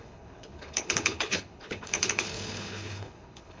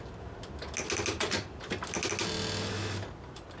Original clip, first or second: second